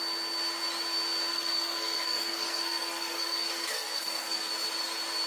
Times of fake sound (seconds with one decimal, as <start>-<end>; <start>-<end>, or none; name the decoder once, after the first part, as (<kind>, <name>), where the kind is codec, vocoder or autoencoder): 1.3-4.5 (codec, SNAC)